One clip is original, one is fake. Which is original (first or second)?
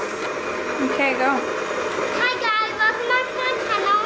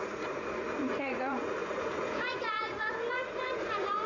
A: first